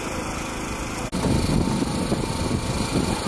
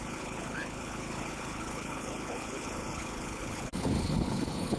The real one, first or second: first